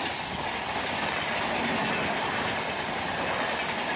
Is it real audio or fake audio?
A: real